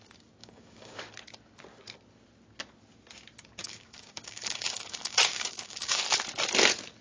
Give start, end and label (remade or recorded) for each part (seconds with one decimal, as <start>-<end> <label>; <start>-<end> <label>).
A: 0.0-0.4 recorded; 0.4-1.0 remade; 1.0-3.6 recorded; 3.6-6.0 remade; 6.0-7.0 recorded